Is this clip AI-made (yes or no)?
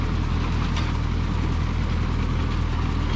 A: no